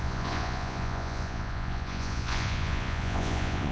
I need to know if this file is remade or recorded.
remade